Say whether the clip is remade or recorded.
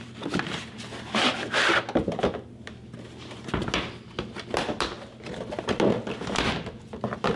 recorded